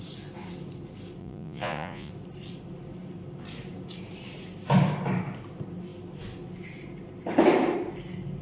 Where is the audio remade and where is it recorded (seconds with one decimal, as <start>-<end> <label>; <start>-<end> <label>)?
0.0-1.2 recorded; 1.2-2.1 remade; 2.1-8.4 recorded